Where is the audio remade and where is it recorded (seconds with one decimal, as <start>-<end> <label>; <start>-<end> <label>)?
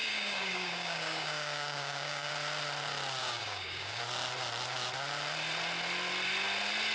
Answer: 0.0-2.3 remade; 2.3-3.2 recorded; 3.2-4.0 remade; 4.0-6.9 recorded